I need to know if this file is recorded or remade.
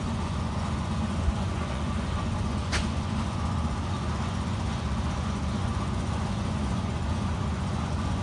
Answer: remade